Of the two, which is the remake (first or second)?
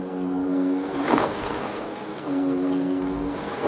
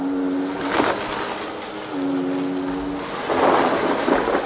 first